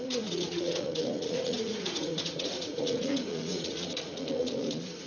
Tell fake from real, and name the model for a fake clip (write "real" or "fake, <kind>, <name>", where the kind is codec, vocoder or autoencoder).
fake, vocoder, Vocos